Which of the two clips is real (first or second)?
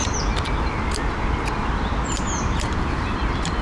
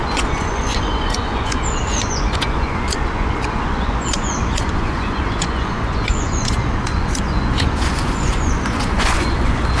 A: first